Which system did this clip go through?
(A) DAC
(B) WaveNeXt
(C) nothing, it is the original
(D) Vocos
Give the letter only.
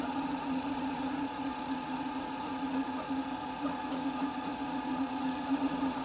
D